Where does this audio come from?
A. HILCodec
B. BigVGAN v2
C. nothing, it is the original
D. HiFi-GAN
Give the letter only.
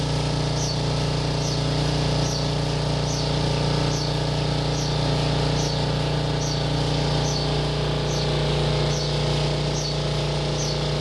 C